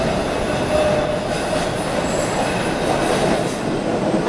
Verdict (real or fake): real